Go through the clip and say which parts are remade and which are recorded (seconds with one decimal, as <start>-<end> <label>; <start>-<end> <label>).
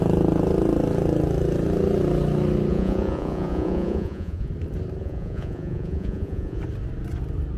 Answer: 0.0-2.7 recorded; 2.7-4.5 remade; 4.5-5.0 recorded; 5.0-6.6 remade; 6.6-7.6 recorded